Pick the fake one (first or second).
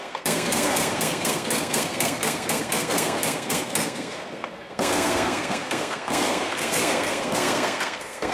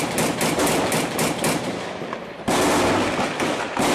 first